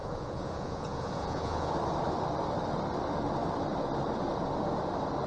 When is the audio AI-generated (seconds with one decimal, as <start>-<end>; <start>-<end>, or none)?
0.0-1.7